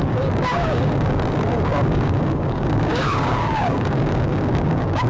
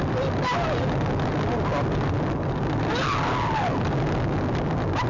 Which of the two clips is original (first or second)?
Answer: second